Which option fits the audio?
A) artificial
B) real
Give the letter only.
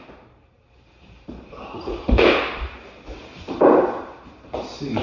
A